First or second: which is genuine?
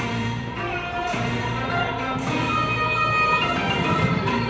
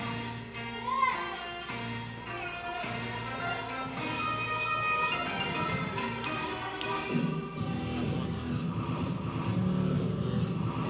second